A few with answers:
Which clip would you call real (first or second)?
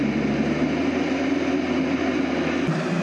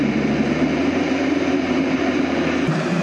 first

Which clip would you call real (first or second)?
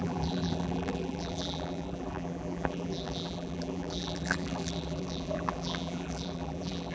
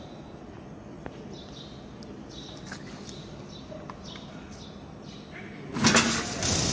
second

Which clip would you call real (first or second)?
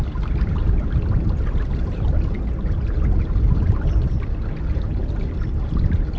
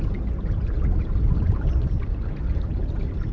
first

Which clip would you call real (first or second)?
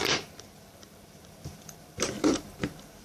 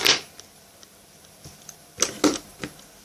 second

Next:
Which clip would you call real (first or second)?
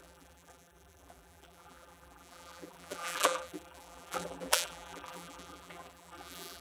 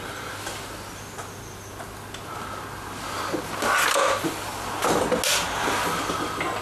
second